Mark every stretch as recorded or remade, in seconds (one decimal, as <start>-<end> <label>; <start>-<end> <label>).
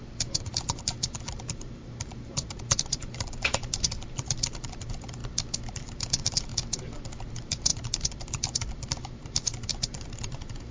0.0-5.2 remade; 5.2-5.7 recorded; 5.7-6.5 remade; 6.5-7.3 recorded; 7.3-10.7 remade